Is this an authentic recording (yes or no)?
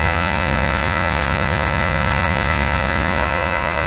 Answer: no